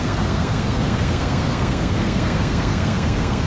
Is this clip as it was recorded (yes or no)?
no